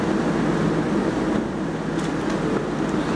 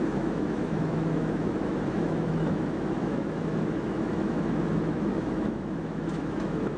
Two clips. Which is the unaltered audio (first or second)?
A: first